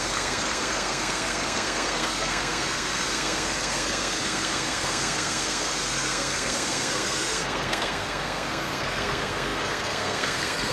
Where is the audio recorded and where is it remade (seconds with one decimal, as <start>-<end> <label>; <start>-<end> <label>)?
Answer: 0.0-10.7 remade